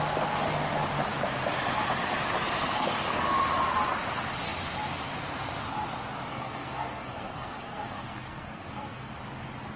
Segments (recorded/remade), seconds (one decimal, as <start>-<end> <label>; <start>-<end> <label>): 0.0-6.3 recorded; 6.3-9.1 remade; 9.1-9.8 recorded